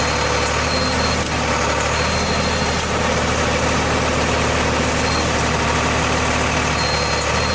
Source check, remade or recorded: recorded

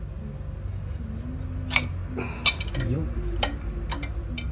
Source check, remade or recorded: recorded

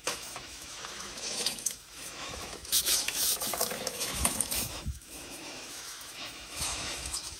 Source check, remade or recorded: remade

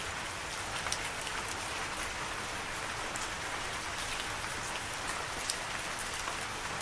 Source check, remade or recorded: recorded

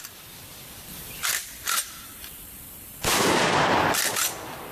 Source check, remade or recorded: remade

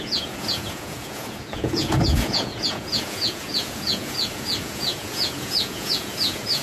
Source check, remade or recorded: remade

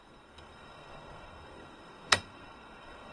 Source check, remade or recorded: remade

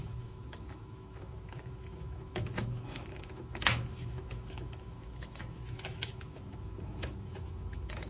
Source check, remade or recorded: remade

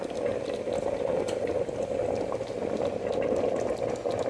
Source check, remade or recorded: recorded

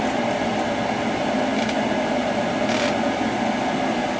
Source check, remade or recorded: recorded